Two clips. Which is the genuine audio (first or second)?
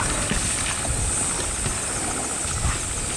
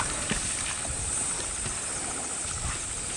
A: first